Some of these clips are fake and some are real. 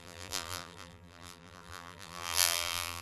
fake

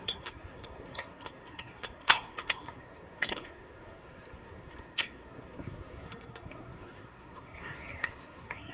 fake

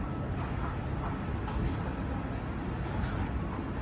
real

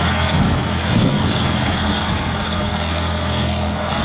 fake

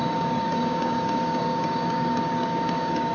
fake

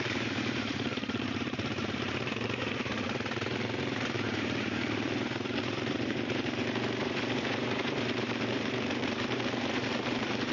fake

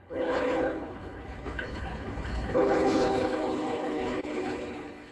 fake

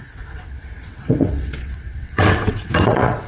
fake